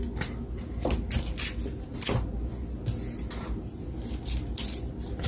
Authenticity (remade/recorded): recorded